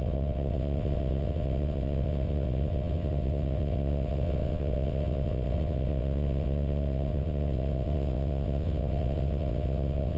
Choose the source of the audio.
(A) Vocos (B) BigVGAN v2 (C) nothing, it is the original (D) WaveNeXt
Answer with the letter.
D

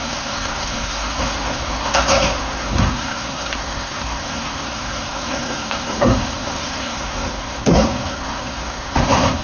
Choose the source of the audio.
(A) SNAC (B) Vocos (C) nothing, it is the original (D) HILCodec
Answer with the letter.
A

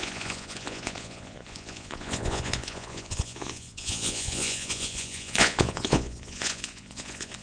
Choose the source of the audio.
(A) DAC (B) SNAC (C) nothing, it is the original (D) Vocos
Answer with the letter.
D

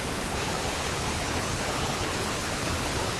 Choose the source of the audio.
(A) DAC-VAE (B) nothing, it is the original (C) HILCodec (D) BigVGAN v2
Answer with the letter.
C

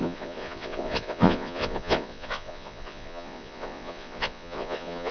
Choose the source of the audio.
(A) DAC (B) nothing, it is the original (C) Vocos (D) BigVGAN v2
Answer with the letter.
C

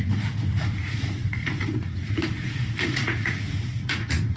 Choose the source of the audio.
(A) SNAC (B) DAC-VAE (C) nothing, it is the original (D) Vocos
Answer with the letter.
D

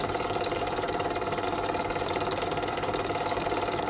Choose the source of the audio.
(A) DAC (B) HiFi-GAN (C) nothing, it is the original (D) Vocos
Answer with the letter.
A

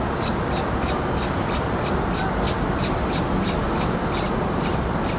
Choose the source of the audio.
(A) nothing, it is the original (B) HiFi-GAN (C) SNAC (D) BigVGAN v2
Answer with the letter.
A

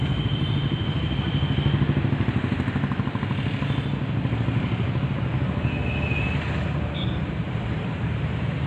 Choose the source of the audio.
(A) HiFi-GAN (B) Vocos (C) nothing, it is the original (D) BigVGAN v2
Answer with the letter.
C